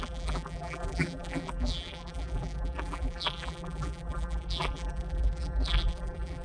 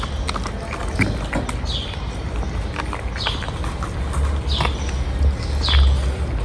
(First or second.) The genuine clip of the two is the second